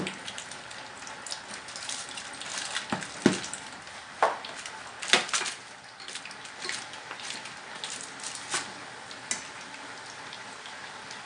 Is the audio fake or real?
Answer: real